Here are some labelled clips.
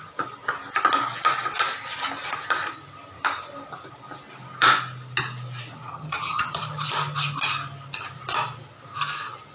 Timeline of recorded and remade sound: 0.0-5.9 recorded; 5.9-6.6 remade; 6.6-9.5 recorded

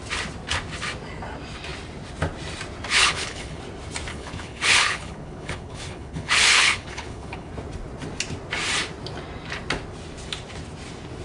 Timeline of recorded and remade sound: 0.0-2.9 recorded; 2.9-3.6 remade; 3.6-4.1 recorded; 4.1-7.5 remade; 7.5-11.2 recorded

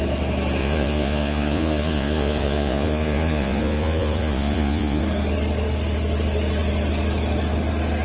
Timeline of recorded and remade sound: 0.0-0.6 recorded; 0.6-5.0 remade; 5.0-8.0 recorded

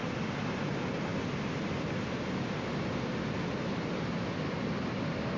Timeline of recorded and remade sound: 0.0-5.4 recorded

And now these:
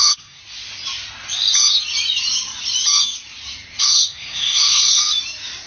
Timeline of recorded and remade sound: 0.0-0.4 remade; 0.4-3.8 recorded; 3.8-5.0 remade; 5.0-5.7 recorded